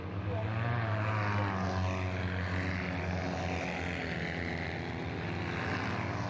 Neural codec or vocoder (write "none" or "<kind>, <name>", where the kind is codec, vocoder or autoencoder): none